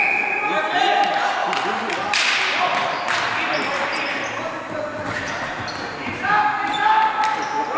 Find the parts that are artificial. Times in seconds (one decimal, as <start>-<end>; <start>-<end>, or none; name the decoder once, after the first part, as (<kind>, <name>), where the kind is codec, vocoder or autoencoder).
none